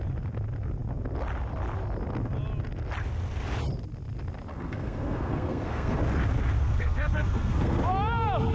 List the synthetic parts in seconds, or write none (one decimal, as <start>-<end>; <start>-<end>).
4.5-6.0; 6.6-7.8